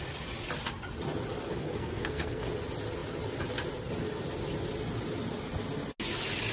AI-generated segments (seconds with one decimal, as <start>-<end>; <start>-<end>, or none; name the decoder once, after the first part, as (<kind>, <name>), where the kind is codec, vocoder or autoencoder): 1.6-2.5 (codec, SNAC)